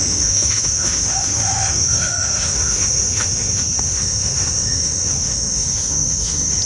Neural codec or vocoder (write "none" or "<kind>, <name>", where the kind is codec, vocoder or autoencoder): autoencoder, DAC-VAE